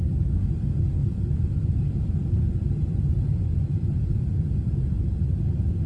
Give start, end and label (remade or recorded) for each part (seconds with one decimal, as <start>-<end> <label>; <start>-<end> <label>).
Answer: 0.0-1.0 recorded; 1.0-4.5 remade; 4.5-5.9 recorded